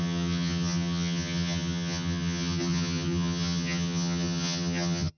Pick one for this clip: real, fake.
fake